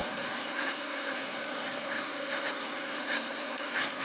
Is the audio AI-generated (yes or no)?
yes